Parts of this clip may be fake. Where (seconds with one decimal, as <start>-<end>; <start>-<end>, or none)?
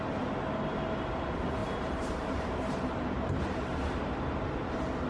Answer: 1.6-4.0